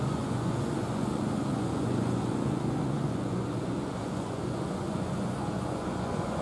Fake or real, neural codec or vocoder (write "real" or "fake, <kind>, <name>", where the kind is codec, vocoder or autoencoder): fake, vocoder, Vocos